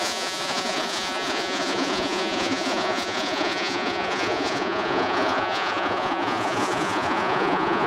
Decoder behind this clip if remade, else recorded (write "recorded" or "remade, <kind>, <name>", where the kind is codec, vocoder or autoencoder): remade, vocoder, Vocos